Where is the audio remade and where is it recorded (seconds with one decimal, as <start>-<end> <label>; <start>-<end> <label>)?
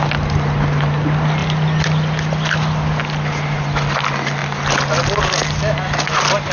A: 0.0-6.5 recorded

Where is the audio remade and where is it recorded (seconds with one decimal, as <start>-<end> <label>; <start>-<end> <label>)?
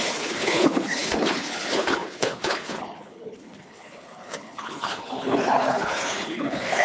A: 0.0-6.8 remade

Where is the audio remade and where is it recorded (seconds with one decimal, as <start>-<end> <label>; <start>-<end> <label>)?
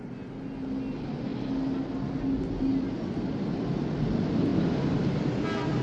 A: 0.0-5.8 recorded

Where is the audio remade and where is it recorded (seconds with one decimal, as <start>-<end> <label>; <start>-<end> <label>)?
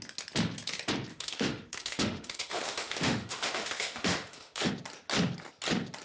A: 0.0-1.1 recorded; 1.1-4.7 remade; 4.7-6.0 recorded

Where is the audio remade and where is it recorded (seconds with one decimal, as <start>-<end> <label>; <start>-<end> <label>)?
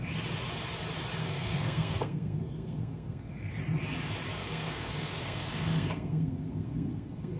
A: 0.0-1.2 recorded; 1.2-3.5 remade; 3.5-4.4 recorded; 4.4-7.4 remade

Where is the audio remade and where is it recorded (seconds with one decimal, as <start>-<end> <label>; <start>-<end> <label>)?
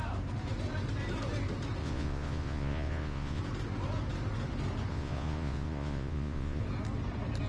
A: 0.0-1.8 recorded; 1.8-3.4 remade; 3.4-4.9 recorded; 4.9-6.6 remade; 6.6-7.5 recorded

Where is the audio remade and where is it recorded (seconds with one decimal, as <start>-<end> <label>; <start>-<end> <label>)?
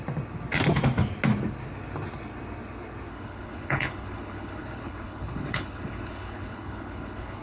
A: 0.0-3.1 recorded; 3.1-7.4 remade